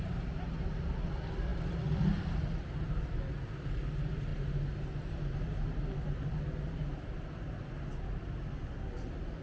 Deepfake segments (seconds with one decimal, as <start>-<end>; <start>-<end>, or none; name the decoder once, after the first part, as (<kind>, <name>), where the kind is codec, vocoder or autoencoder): none